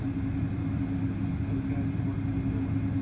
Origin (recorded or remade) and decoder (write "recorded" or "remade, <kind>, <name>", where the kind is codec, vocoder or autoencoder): recorded